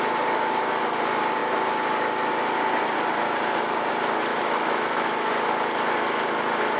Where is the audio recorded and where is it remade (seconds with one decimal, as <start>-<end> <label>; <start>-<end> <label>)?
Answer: 0.0-4.3 recorded; 4.3-5.3 remade; 5.3-6.8 recorded